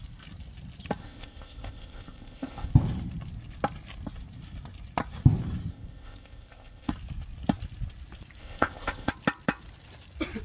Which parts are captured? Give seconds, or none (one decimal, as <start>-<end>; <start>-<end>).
0.0-1.0; 2.7-5.7; 6.9-8.4; 9.1-10.4